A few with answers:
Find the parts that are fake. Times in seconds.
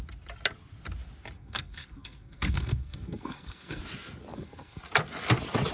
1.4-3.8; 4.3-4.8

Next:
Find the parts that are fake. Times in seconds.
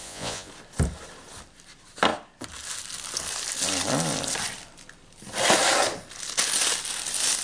0.0-0.5